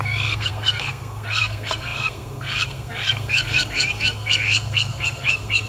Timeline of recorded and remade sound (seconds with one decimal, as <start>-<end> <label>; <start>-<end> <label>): 0.0-5.7 remade